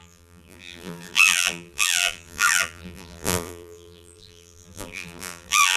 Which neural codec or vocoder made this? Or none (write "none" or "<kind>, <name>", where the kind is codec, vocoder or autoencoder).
vocoder, BigVGAN v2